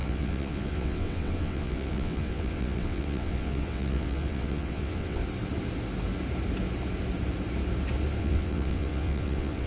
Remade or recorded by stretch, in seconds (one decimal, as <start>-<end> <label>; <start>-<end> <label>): 0.0-5.2 remade; 5.2-8.2 recorded; 8.2-9.7 remade